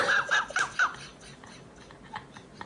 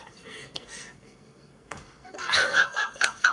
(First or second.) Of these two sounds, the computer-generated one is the second